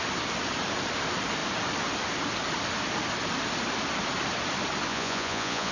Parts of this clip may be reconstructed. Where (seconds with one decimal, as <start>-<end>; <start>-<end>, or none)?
4.9-5.7